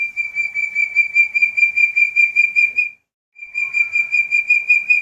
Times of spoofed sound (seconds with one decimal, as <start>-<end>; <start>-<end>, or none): none